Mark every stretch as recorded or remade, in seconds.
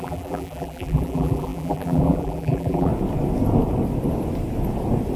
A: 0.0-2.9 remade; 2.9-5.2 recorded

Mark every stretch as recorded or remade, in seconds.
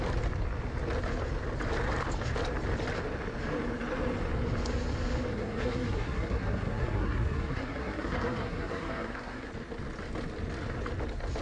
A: 0.0-5.3 recorded; 5.3-9.5 remade; 9.5-11.4 recorded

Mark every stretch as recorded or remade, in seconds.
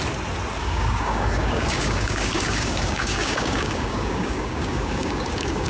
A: 0.0-0.6 recorded; 0.6-5.7 remade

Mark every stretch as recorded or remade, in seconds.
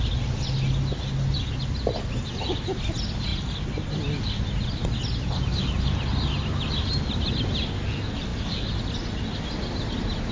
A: 0.0-10.3 recorded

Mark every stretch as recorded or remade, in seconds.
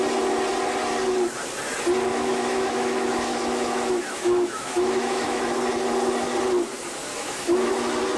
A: 0.0-2.1 recorded; 2.1-5.4 remade; 5.4-7.1 recorded; 7.1-7.7 remade; 7.7-8.2 recorded